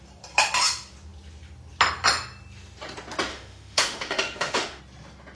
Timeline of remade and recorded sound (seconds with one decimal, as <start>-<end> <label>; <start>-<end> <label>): 0.0-3.3 recorded; 3.3-4.8 remade; 4.8-5.4 recorded